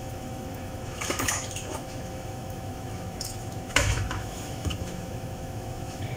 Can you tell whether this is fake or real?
fake